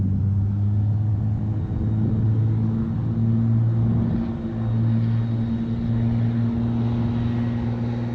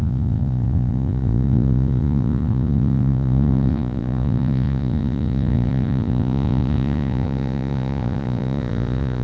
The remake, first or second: second